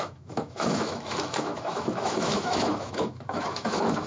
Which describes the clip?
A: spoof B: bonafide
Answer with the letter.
A